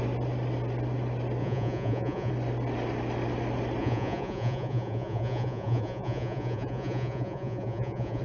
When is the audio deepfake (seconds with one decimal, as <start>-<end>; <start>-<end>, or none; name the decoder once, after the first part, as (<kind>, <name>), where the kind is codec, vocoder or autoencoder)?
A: 1.4-2.3 (vocoder, Vocos); 3.8-8.2